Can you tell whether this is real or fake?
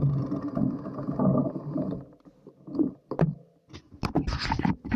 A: real